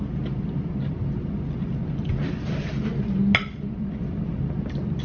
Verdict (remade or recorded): recorded